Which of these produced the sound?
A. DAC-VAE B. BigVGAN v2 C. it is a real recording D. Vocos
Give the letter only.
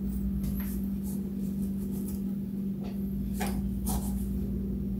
C